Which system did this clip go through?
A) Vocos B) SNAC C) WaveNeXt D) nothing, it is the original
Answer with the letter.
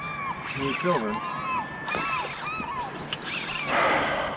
D